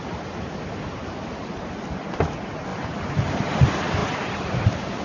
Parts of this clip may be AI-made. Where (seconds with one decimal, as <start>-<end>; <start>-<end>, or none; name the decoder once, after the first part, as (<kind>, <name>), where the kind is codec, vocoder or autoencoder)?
2.7-3.6 (vocoder, BigVGAN v2); 4.0-5.0